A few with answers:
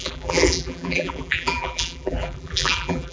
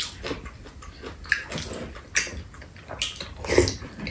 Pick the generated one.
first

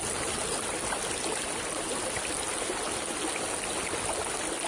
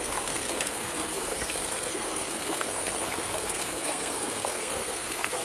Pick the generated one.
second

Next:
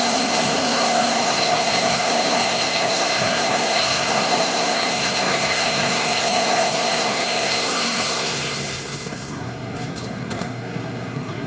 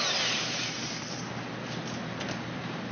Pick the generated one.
first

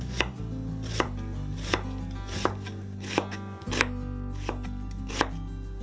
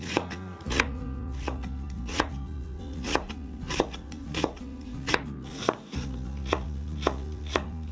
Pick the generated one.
second